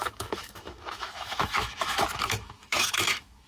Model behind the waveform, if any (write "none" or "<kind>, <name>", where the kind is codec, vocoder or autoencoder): autoencoder, DAC-VAE